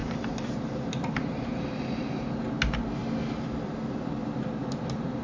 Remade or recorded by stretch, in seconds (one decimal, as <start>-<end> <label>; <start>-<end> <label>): 0.0-2.5 remade; 2.5-5.2 recorded